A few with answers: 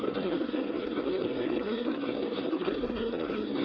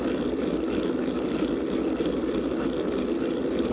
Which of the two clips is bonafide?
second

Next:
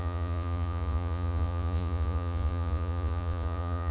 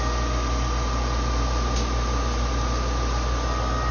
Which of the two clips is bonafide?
second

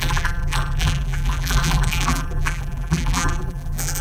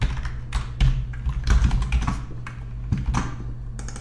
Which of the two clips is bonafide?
second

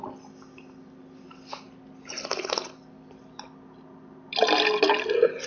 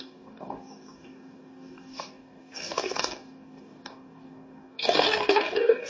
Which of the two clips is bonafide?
first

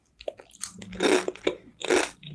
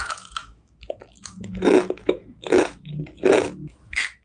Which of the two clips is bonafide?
first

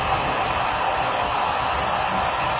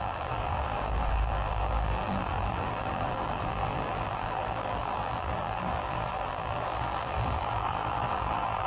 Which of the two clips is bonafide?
first